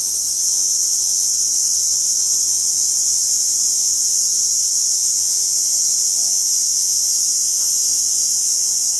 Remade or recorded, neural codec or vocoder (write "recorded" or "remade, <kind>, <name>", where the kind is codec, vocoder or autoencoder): remade, vocoder, Vocos